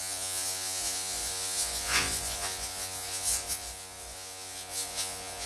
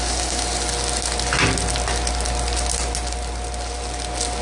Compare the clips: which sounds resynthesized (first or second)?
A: first